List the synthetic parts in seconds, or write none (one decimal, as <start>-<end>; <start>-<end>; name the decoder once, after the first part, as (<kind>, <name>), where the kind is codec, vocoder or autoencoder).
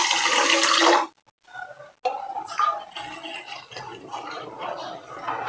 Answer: none